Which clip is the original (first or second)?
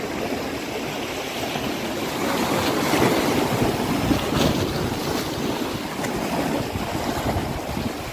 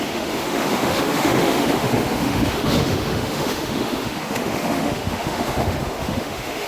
first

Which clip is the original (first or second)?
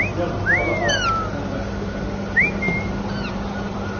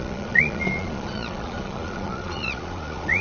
first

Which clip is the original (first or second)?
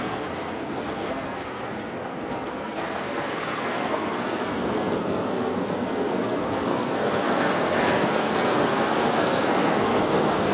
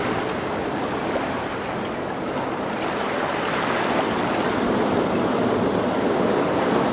second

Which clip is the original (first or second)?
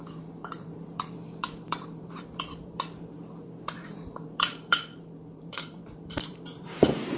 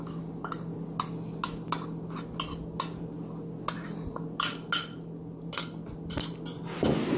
second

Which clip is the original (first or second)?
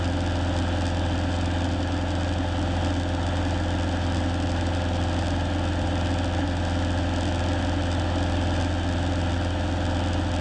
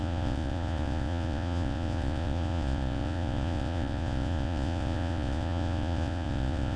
first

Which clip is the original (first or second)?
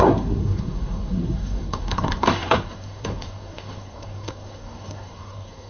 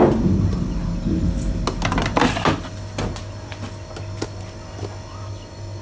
second